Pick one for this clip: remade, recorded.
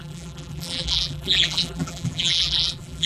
remade